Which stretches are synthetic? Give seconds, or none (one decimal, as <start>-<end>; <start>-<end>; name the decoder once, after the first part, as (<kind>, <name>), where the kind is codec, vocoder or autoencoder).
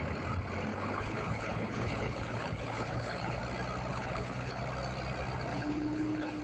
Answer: 0.7-3.4 (codec, HILCodec); 3.9-4.6; 5.5-6.4